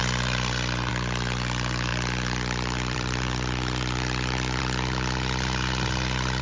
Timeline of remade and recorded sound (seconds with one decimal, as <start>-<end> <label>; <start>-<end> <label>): 0.0-0.9 remade; 0.9-1.9 recorded; 1.9-4.6 remade; 4.6-6.4 recorded